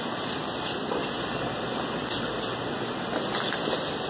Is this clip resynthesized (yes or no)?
no